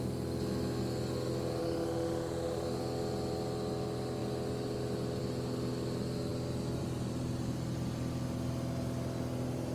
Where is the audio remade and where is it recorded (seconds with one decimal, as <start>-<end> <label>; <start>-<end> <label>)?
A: 0.0-1.6 recorded; 1.6-2.8 remade; 2.8-9.7 recorded